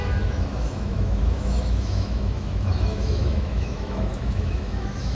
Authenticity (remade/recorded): remade